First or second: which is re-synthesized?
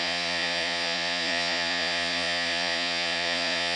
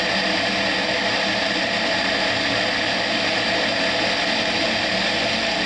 first